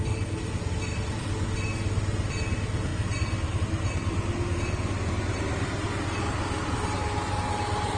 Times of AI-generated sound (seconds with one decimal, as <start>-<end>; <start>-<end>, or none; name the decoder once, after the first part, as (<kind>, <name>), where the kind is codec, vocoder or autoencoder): none